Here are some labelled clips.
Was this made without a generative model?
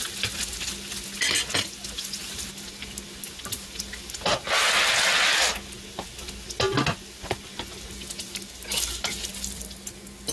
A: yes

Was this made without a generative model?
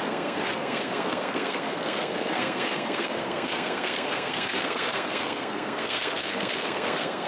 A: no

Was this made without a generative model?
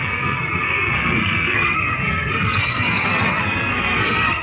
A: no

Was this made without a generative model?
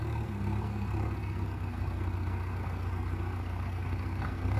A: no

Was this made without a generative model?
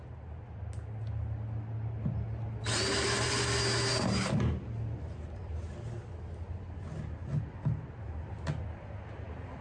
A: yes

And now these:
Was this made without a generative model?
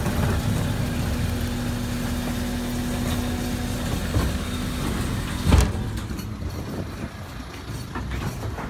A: yes